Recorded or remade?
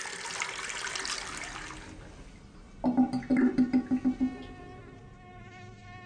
recorded